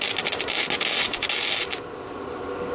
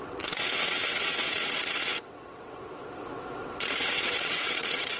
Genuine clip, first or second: first